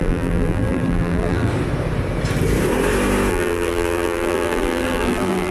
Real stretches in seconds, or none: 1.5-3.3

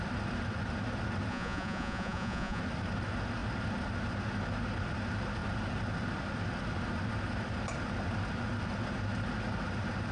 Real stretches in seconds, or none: 0.0-1.3; 2.6-10.1